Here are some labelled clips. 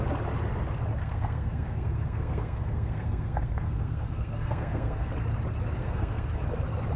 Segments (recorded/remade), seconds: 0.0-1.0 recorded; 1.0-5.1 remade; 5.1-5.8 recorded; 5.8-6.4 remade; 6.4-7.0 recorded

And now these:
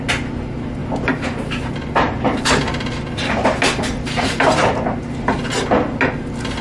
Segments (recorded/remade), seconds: 0.0-0.8 recorded; 0.8-4.4 remade; 4.4-6.6 recorded

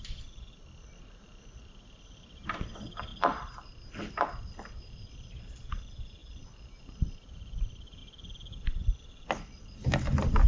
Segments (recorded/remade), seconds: 0.0-10.5 recorded

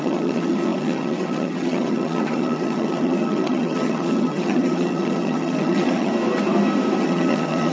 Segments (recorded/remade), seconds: 0.0-6.1 remade; 6.1-7.0 recorded; 7.0-7.7 remade

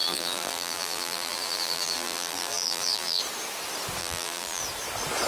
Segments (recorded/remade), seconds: 0.0-3.2 remade; 3.2-4.0 recorded; 4.0-4.6 remade; 4.6-5.3 recorded

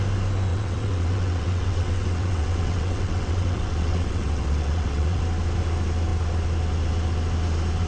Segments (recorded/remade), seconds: 0.0-0.5 recorded; 0.5-5.2 remade; 5.2-7.9 recorded